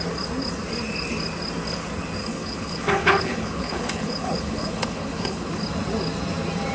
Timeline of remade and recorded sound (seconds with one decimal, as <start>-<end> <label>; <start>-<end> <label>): 0.0-2.2 recorded; 2.2-5.5 remade; 5.5-6.7 recorded